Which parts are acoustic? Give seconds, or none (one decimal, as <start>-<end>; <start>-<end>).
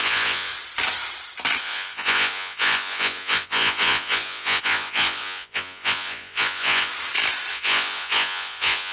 0.5-1.6; 6.9-7.5